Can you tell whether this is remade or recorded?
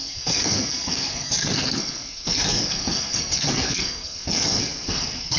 remade